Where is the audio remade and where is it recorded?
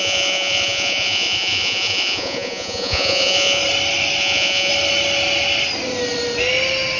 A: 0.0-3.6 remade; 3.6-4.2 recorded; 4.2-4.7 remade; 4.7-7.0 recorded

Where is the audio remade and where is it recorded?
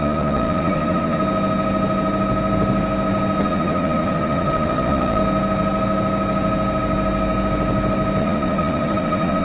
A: 0.0-1.2 remade; 1.2-3.4 recorded; 3.4-5.2 remade; 5.2-8.2 recorded; 8.2-9.4 remade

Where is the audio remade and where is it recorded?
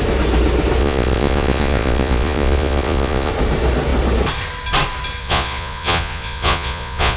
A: 0.0-0.8 recorded; 0.8-3.3 remade; 3.3-5.2 recorded; 5.2-7.2 remade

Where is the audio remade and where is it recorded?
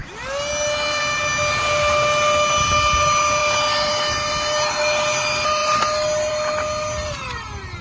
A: 0.0-7.8 recorded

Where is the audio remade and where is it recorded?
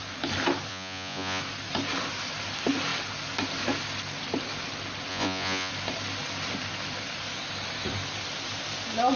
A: 0.0-0.7 recorded; 0.7-1.4 remade; 1.4-5.1 recorded; 5.1-5.7 remade; 5.7-9.2 recorded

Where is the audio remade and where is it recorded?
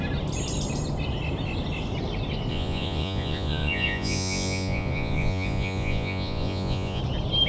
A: 0.0-2.5 recorded; 2.5-7.0 remade; 7.0-7.5 recorded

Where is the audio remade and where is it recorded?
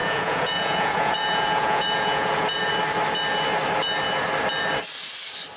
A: 0.0-2.7 remade; 2.7-5.6 recorded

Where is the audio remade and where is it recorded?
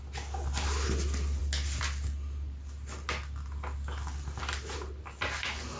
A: 0.0-5.8 recorded